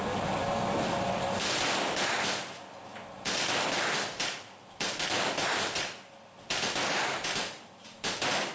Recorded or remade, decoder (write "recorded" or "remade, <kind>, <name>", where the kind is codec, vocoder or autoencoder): remade, vocoder, BigVGAN v2